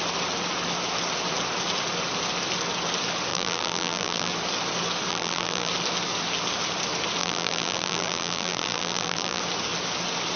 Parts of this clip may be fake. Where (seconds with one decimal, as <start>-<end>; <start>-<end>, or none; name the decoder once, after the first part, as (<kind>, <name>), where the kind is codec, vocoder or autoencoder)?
3.3-4.3 (vocoder, BigVGAN v2); 5.1-5.7; 7.2-9.4